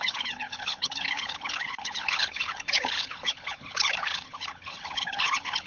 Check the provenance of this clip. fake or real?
fake